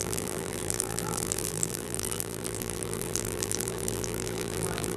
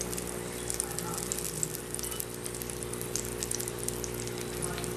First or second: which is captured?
second